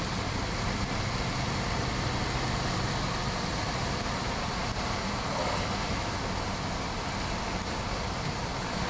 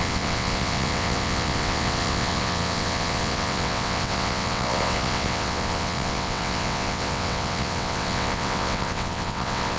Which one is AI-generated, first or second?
second